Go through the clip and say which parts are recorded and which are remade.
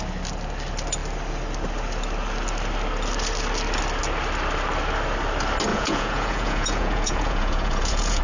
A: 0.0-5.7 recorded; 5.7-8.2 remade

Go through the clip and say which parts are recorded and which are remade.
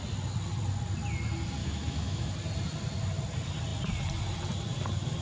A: 0.0-1.6 recorded; 1.6-2.3 remade; 2.3-5.2 recorded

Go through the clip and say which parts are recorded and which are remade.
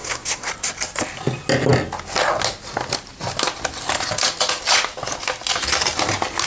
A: 0.0-0.5 remade; 0.5-6.5 recorded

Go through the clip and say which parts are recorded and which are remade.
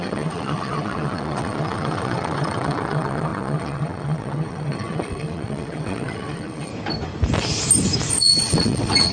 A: 0.0-6.7 remade; 6.7-8.1 recorded; 8.1-9.1 remade